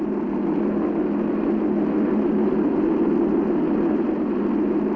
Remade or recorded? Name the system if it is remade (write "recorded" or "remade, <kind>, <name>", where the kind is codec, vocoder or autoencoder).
recorded